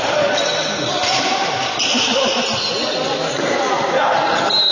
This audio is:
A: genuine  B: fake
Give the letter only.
A